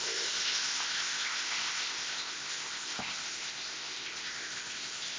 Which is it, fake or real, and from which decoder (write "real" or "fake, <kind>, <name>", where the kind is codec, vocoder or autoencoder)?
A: fake, codec, ZipCodec